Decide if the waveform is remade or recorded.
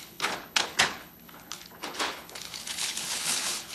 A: remade